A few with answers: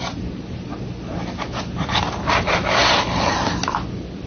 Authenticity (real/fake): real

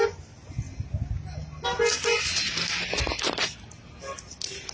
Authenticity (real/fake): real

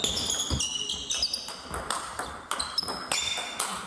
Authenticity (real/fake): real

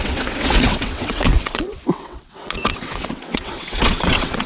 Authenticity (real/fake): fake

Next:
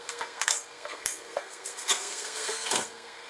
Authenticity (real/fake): fake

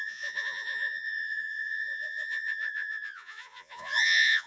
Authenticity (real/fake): fake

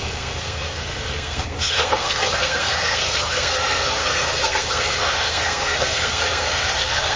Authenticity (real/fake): fake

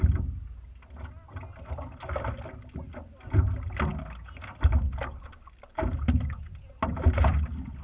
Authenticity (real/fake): real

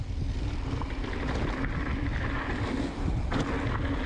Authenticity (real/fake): real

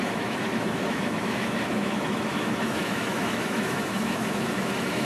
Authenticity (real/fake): fake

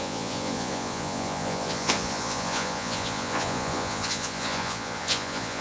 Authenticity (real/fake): fake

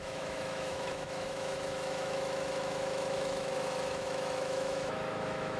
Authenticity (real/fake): fake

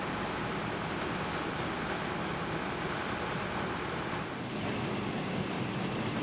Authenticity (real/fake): fake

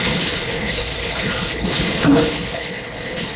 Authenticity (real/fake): fake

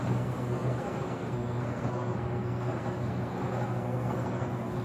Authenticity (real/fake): fake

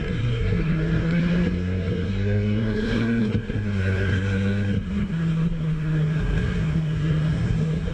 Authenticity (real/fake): fake